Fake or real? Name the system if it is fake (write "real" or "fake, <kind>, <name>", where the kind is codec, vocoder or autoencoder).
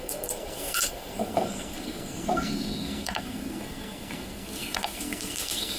fake, codec, SNAC